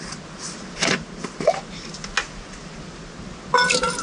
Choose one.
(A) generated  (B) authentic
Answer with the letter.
B